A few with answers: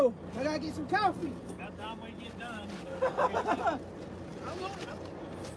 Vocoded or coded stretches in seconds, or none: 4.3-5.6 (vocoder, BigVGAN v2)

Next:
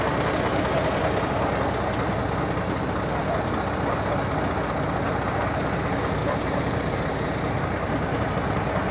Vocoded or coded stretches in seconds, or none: 6.2-8.3 (vocoder, BigVGAN v2)